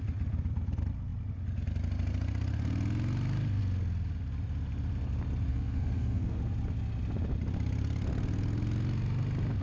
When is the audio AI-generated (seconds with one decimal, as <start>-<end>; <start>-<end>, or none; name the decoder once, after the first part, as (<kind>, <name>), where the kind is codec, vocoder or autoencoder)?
5.5-6.4 (codec, SNAC)